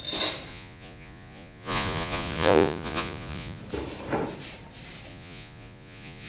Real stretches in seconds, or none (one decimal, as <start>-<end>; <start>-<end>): 0.0-0.5; 3.6-5.1